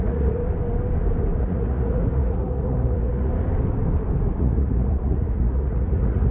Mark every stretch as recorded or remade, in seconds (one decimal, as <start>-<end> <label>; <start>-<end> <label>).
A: 0.0-0.4 remade; 0.4-1.4 recorded; 1.4-3.3 remade; 3.3-4.3 recorded; 4.3-6.3 remade